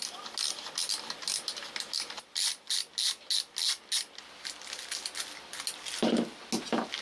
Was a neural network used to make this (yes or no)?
no